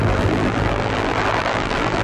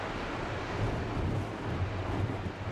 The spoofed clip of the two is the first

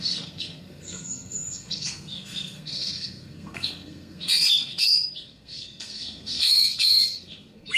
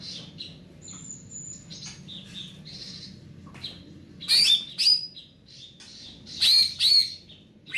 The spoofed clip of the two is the first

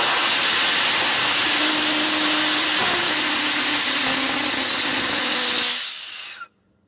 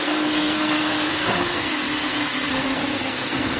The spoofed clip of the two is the second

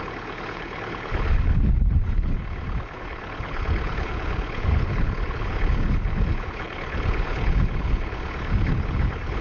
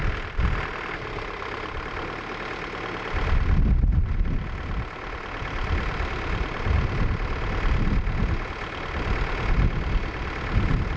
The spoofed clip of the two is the first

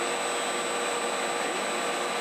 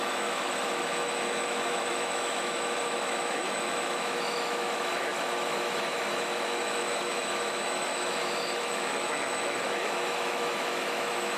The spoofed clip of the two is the second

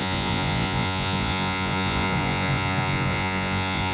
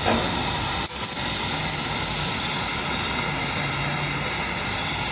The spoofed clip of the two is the first